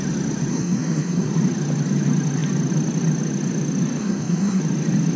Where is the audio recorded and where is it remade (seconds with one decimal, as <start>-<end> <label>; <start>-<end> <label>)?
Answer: 0.0-0.5 recorded; 0.5-1.3 remade; 1.3-4.0 recorded; 4.0-4.6 remade; 4.6-5.2 recorded